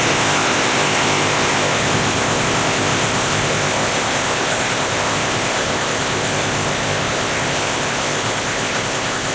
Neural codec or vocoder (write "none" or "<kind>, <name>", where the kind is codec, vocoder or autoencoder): codec, ZipCodec